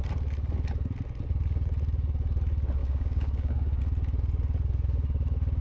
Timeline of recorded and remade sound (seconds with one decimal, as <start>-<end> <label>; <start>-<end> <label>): 0.0-2.8 recorded; 2.8-3.8 remade; 3.8-5.6 recorded